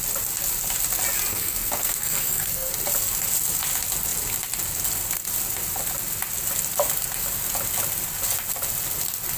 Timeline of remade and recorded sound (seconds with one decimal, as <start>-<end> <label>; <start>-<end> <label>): 0.0-1.3 recorded; 1.3-2.7 remade; 2.7-9.4 recorded